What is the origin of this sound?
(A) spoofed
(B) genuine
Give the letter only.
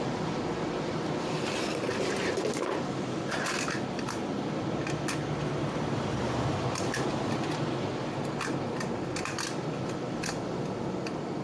B